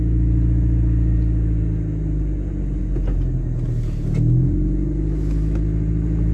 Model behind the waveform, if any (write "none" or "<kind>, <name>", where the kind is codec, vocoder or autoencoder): none